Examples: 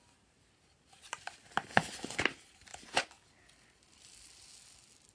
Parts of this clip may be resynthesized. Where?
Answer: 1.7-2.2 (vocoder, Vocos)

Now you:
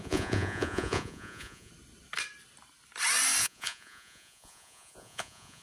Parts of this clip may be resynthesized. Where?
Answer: 0.0-1.7 (vocoder, Vocos); 3.4-5.6

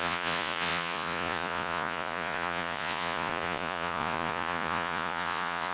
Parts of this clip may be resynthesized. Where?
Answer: 0.0-5.7 (vocoder, Vocos)

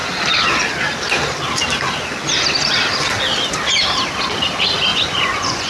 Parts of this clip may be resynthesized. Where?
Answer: 4.9-5.7 (vocoder, Vocos)

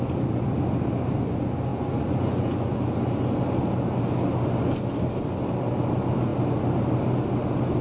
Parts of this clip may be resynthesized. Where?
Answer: 1.7-2.8 (vocoder, Vocos)

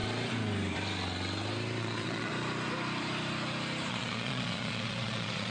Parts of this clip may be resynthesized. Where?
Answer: 1.8-2.3 (vocoder, Vocos); 3.9-5.5

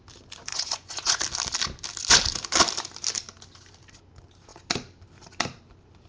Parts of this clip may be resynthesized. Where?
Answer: 0.5-1.2 (vocoder, Vocos)